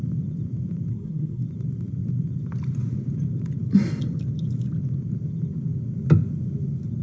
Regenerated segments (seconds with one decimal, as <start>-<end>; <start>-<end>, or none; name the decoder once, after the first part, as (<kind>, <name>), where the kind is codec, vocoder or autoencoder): 0.9-1.4 (codec, SNAC)